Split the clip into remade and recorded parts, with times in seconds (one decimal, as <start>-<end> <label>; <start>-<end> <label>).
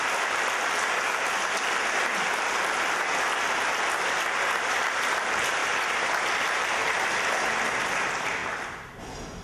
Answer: 0.0-5.6 recorded; 5.6-6.8 remade; 6.8-9.4 recorded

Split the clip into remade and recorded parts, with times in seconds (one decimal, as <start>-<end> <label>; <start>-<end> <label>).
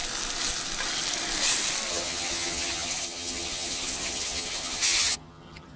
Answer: 0.0-1.9 recorded; 1.9-5.8 remade